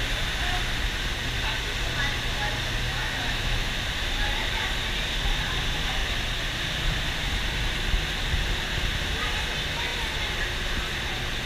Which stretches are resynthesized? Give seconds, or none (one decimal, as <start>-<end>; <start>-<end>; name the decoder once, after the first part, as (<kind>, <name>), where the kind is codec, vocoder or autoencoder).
2.9-3.7 (autoencoder, DAC-VAE)